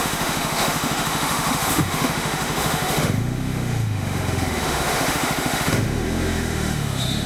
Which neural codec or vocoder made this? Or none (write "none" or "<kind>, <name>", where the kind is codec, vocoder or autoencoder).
autoencoder, DAC-VAE